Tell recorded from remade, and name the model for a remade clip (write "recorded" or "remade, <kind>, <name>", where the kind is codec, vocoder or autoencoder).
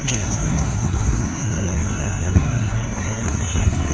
remade, codec, SNAC